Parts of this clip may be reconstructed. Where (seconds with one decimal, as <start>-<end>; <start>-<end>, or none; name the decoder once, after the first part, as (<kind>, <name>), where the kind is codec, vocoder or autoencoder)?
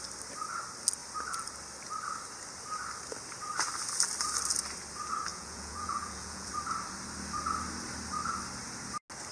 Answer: 5.3-6.5 (vocoder, Vocos)